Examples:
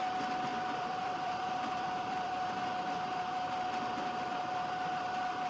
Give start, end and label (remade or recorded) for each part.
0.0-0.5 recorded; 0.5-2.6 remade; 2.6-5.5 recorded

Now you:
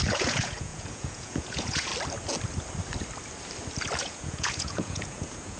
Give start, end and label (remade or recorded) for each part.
0.0-1.9 remade; 1.9-4.0 recorded; 4.0-5.6 remade